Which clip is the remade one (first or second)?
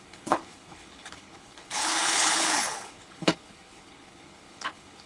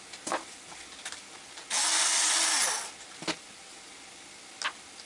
first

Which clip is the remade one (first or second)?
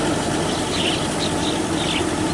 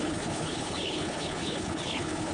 second